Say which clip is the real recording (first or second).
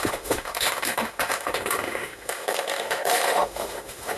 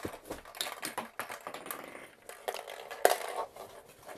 second